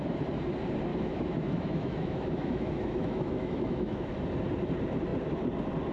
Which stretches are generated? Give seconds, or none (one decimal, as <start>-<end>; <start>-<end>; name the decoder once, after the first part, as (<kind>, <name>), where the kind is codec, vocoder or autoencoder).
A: 0.9-4.1 (autoencoder, DAC-VAE)